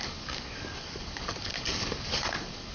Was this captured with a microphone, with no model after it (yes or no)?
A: no